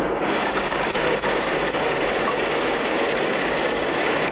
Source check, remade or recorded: remade